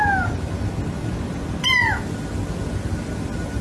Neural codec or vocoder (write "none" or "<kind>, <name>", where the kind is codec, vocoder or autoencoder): none